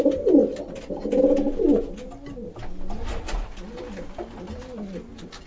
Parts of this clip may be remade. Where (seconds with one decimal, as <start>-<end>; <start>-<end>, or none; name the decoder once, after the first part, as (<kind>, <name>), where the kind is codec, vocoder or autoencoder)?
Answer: none